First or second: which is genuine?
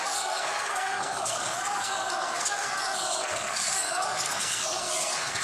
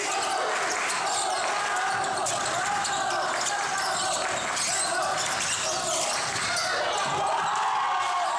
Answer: second